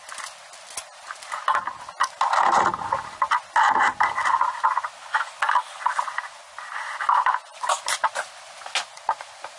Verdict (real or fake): real